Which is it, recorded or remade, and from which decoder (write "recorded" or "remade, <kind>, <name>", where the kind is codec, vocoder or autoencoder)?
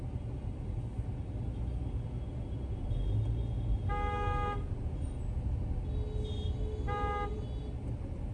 recorded